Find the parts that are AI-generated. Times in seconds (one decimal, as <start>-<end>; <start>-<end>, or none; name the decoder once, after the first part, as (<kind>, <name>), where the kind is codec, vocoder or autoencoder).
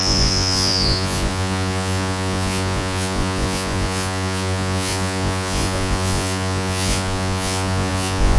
0.0-8.4 (vocoder, Vocos)